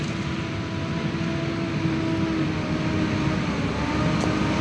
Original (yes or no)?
yes